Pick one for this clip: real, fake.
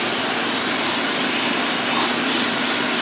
real